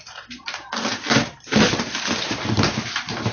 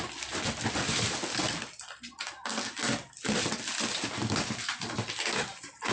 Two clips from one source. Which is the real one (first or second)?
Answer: second